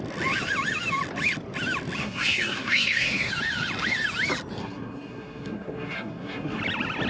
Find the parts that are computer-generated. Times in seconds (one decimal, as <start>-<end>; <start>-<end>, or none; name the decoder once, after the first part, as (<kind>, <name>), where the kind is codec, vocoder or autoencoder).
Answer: 2.0-3.3 (codec, SNAC); 4.6-6.6